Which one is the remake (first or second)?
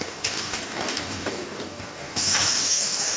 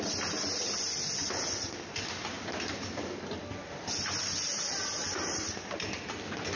first